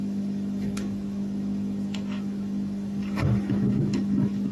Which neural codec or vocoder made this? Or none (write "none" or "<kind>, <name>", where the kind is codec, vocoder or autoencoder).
autoencoder, DAC-VAE